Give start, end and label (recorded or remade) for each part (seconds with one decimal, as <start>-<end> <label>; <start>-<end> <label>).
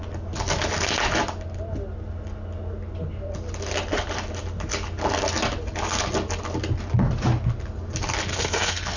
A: 0.0-8.3 recorded; 8.3-9.0 remade